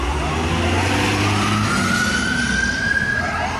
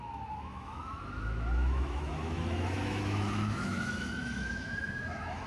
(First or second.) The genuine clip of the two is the first